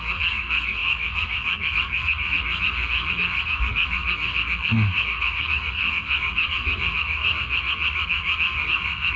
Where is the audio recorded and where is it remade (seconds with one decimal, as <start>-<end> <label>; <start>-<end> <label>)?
0.0-9.2 remade